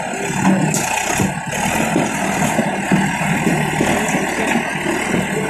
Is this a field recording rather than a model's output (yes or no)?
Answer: yes